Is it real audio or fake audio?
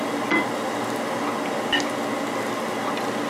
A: real